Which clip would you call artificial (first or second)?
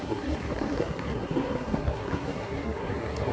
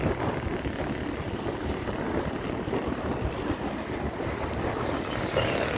first